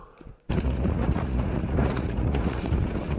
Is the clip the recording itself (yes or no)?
no